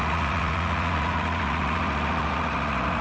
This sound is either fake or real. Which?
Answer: fake